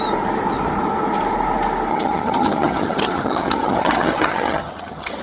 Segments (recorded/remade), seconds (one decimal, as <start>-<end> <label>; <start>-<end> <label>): 0.0-1.9 recorded; 1.9-5.2 remade